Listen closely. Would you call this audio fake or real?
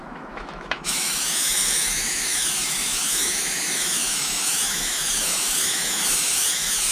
fake